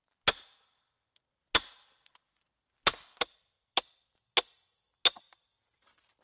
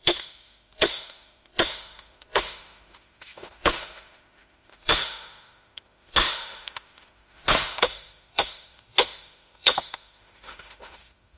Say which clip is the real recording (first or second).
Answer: first